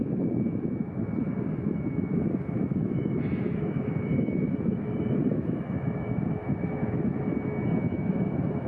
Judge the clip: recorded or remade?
remade